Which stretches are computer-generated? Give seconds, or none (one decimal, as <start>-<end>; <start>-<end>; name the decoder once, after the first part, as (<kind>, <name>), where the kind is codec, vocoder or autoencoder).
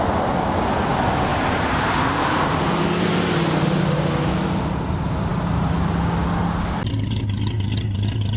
1.3-1.9 (vocoder, BigVGAN v2)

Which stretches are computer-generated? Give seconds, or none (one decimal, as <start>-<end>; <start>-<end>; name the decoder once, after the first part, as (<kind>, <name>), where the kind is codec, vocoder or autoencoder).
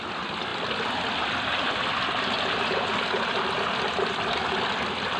0.5-1.3 (vocoder, BigVGAN v2)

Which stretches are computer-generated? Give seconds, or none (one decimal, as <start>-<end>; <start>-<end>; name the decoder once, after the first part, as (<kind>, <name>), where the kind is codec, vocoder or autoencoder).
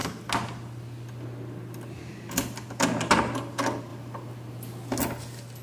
none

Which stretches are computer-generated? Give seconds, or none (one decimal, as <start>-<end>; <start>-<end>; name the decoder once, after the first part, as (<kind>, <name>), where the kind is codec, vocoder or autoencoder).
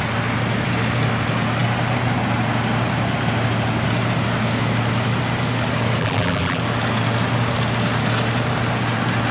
6.0-6.6 (vocoder, BigVGAN v2)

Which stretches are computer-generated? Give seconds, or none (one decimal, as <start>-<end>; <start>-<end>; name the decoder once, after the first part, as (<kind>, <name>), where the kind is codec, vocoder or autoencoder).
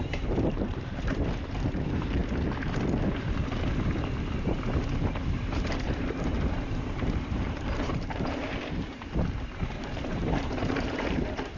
0.0-2.2 (vocoder, BigVGAN v2); 4.4-8.6; 9.6-11.6